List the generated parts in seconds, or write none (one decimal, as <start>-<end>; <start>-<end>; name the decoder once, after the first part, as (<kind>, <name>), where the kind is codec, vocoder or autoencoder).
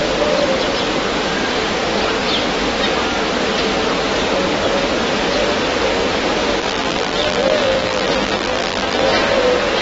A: 6.6-9.0 (vocoder, BigVGAN v2)